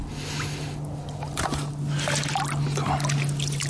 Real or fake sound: real